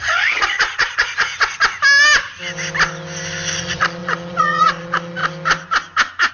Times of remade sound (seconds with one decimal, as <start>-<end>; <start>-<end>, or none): 0.0-1.3; 3.6-5.2

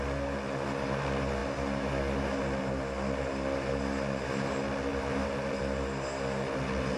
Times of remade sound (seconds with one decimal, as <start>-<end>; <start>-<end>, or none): 4.9-5.6

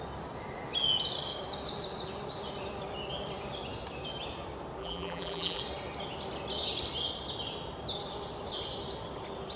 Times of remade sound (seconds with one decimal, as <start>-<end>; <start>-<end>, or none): 4.8-5.6

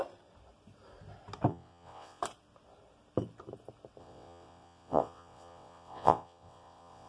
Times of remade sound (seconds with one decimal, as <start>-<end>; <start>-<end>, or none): 1.5-2.2; 4.0-7.1

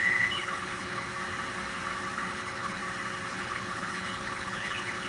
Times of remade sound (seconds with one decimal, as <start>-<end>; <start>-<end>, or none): 0.0-1.1; 2.3-2.8; 3.3-5.1

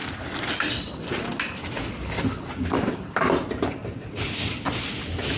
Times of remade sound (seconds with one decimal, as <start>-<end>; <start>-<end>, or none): none

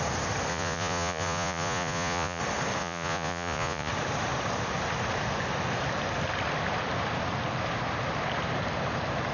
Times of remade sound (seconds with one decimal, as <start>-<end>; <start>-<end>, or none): 0.5-2.4; 2.8-3.9